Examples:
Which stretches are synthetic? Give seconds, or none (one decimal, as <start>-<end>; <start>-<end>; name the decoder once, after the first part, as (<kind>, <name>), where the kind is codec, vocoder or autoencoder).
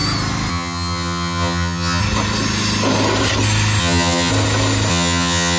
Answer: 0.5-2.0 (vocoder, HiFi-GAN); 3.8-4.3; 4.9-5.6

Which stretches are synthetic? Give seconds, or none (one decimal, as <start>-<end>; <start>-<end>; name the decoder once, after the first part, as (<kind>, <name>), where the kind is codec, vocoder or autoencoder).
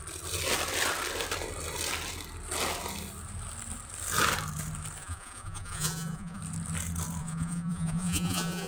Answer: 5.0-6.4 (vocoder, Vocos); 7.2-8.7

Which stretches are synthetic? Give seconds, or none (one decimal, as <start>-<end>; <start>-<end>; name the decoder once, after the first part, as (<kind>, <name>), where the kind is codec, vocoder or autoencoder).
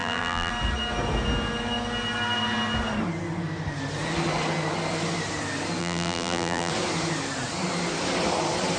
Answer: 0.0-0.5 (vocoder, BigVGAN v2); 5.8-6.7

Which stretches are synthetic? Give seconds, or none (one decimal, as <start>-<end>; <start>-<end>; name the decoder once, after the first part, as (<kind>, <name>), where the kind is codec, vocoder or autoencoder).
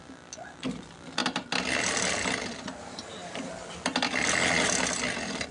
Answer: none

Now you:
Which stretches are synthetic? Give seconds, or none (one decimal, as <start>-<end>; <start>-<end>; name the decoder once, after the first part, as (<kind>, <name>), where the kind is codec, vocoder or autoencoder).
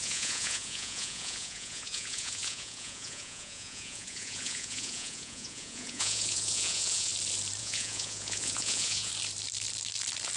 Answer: 0.0-7.1 (vocoder, Vocos); 7.6-9.1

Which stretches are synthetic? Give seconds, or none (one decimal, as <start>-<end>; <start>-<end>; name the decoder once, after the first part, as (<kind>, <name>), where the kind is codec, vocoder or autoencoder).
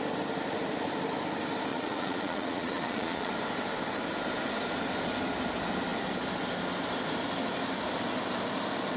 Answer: 1.7-3.3 (vocoder, Vocos)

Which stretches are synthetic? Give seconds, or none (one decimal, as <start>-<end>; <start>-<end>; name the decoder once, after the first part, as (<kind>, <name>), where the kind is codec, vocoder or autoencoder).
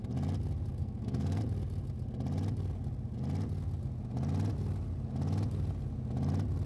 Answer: 0.8-1.4 (codec, SNAC)